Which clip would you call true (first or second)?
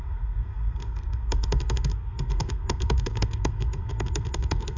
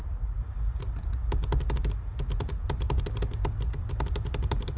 second